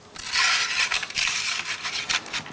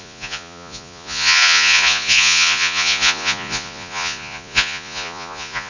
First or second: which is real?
first